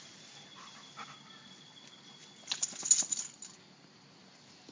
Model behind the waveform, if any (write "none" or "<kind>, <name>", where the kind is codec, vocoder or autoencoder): none